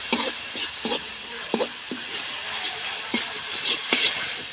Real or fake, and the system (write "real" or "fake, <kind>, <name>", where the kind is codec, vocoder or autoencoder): fake, vocoder, BigVGAN v2